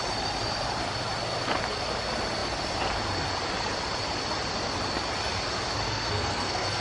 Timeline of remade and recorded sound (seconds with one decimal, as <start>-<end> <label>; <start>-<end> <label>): 0.0-5.9 recorded; 5.9-6.8 remade